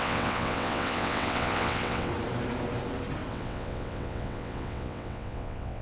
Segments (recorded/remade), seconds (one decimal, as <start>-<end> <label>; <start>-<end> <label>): 0.0-2.1 remade; 2.1-3.3 recorded; 3.3-5.8 remade